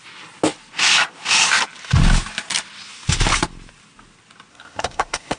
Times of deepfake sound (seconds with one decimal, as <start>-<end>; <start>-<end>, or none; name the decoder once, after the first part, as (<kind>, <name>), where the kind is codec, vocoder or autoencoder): 4.5-5.4 (codec, SNAC)